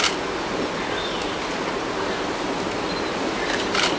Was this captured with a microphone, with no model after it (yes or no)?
yes